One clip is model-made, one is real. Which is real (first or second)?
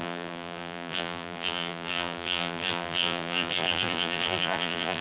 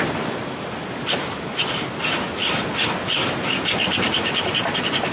second